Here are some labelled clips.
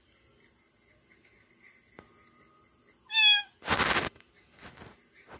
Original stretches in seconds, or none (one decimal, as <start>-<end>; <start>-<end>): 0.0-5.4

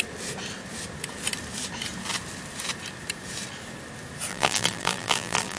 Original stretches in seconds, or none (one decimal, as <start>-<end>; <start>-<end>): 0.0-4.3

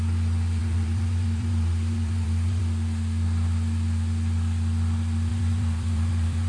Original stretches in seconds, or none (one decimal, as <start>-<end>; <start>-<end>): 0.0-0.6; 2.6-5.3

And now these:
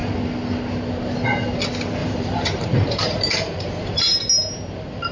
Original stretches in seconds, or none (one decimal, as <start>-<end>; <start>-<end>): 0.0-2.0; 4.0-5.1

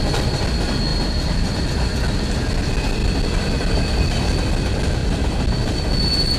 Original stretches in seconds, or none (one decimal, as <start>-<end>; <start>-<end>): 0.0-0.9; 1.6-3.0; 4.0-5.0; 5.8-6.4